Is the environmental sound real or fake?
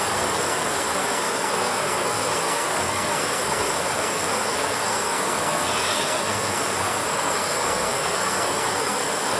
fake